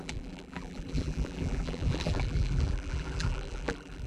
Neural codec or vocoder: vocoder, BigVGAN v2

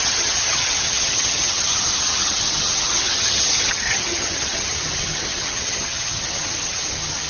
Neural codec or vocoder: vocoder, HiFi-GAN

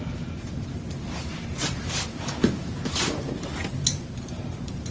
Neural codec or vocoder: vocoder, BigVGAN v2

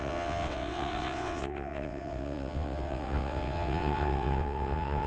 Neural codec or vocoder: vocoder, WaveNeXt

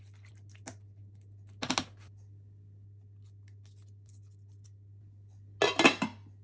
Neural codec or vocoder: none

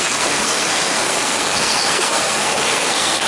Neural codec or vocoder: codec, SNAC